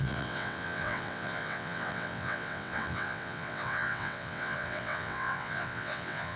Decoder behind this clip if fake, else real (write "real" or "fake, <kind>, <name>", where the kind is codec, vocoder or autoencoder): fake, vocoder, WaveNeXt